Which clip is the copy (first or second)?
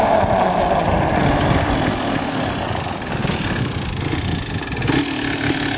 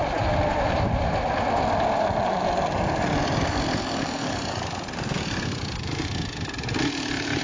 second